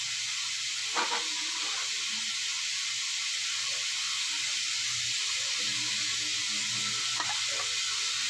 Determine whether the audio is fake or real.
real